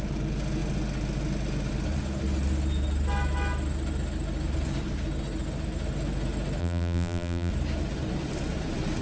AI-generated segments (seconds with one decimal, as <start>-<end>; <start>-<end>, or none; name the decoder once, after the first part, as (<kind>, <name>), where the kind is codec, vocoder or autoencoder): 6.6-7.5 (vocoder, BigVGAN v2)